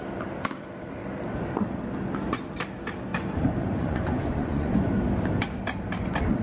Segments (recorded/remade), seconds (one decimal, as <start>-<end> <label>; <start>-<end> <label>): 0.0-3.1 recorded; 3.1-4.9 remade; 4.9-6.4 recorded